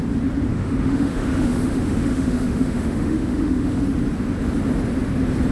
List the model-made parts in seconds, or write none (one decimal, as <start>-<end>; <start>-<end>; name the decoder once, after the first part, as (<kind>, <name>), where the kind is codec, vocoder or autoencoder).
0.5-3.8 (autoencoder, DAC-VAE)